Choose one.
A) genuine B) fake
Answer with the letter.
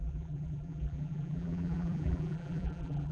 B